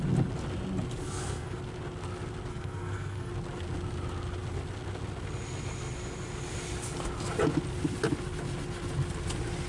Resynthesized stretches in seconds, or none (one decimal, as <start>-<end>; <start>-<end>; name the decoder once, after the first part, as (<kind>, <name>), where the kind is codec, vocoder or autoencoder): 1.0-1.6 (codec, SNAC); 2.5-3.3